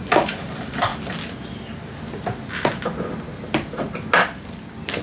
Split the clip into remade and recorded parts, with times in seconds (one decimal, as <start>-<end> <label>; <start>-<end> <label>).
0.0-5.0 recorded